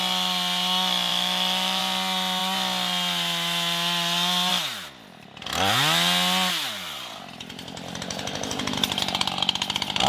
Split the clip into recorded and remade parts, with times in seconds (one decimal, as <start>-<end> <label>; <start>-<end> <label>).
0.0-1.1 recorded; 1.1-1.8 remade; 1.8-10.1 recorded